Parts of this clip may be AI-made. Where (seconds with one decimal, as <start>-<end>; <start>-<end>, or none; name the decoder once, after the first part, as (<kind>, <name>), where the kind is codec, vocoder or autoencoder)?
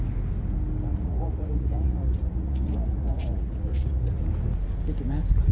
0.9-4.2 (vocoder, Vocos)